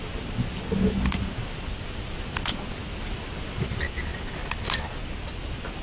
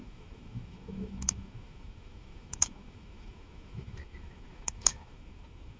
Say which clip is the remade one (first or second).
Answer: second